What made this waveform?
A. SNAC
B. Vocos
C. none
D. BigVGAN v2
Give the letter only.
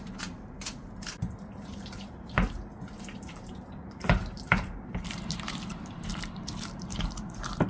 D